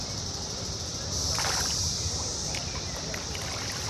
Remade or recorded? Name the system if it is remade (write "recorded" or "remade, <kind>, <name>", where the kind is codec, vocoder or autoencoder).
remade, vocoder, BigVGAN v2